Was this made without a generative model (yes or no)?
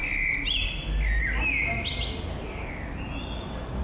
yes